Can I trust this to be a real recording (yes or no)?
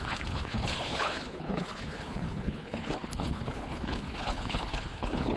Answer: no